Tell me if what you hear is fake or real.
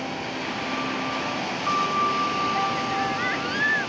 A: real